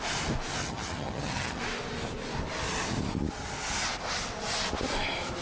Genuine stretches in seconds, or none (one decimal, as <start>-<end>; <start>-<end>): 0.0-0.6; 1.6-5.4